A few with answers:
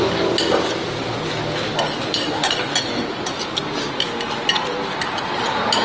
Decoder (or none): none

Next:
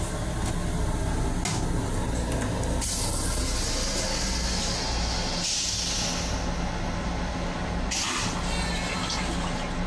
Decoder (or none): none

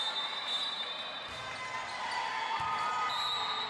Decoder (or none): none